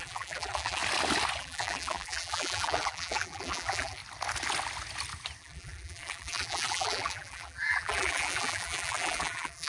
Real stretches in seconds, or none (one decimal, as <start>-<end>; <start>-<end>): 0.8-1.4; 4.0-5.4